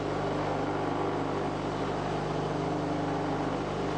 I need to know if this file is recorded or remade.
recorded